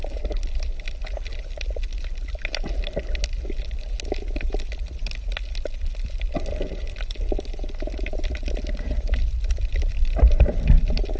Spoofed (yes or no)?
no